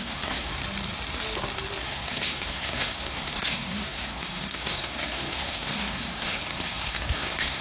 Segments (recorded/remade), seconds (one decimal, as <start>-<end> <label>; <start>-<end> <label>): 0.0-0.5 remade; 0.5-1.8 recorded; 1.8-7.6 remade

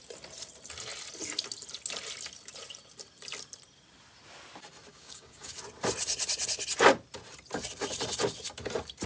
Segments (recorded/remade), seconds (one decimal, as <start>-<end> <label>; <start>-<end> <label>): 0.0-4.9 recorded; 4.9-5.5 remade; 5.5-9.1 recorded

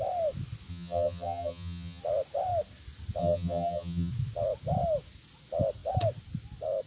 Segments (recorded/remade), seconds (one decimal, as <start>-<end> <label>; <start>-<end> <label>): 0.0-0.7 recorded; 0.7-2.0 remade; 2.0-3.2 recorded; 3.2-4.1 remade; 4.1-6.9 recorded

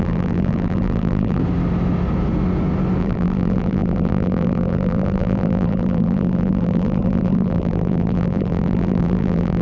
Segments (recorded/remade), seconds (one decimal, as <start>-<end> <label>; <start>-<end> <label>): 0.0-1.4 remade; 1.4-3.0 recorded; 3.0-9.6 remade

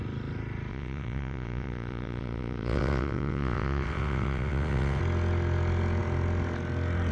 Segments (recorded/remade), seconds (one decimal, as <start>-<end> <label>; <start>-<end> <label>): 0.0-0.7 recorded; 0.7-5.0 remade; 5.0-7.1 recorded

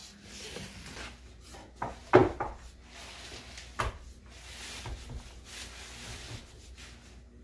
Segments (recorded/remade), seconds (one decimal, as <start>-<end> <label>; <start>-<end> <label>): 0.0-7.4 recorded